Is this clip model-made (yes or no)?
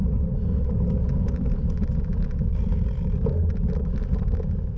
no